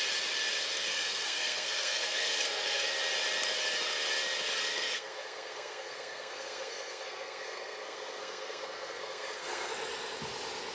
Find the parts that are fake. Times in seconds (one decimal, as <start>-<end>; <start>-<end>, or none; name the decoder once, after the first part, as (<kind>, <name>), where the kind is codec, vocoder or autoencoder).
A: 0.9-2.9 (codec, SNAC); 4.7-9.7